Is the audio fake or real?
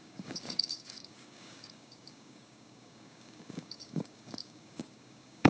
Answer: fake